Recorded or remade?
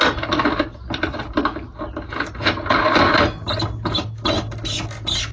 recorded